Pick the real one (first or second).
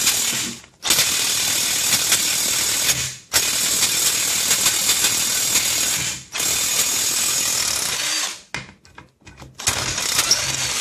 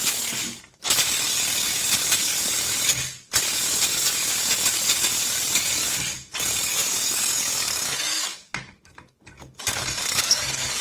first